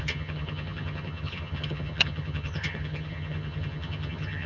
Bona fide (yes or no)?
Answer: no